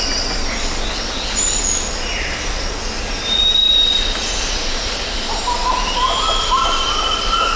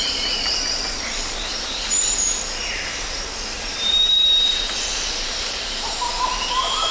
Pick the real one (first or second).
first